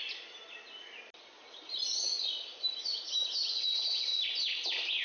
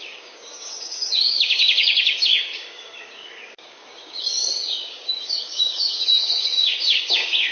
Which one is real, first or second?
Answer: first